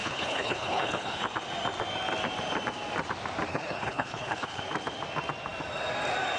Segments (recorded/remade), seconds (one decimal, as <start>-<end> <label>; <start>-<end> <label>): 0.0-1.2 remade; 1.2-3.5 recorded; 3.5-4.6 remade; 4.6-6.4 recorded